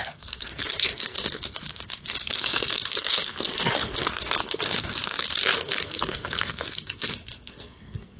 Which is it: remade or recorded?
remade